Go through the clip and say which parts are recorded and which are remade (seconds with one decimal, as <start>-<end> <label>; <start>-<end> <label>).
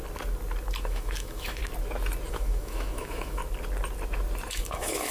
0.0-0.8 recorded; 0.8-1.6 remade; 1.6-2.3 recorded; 2.3-3.4 remade; 3.4-4.5 recorded; 4.5-5.1 remade